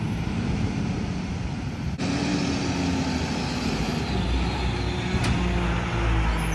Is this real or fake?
real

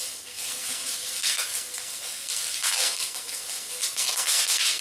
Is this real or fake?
fake